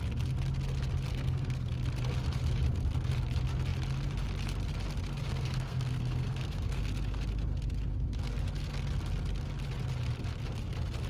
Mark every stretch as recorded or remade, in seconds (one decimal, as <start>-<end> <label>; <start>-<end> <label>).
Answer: 0.0-1.1 recorded; 1.1-1.7 remade; 1.7-5.3 recorded; 5.3-6.8 remade; 6.8-11.1 recorded